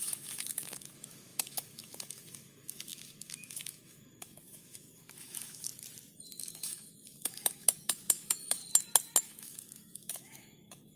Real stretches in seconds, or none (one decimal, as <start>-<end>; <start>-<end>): 5.7-6.4; 8.6-9.2